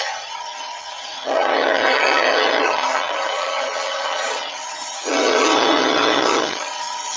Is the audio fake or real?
fake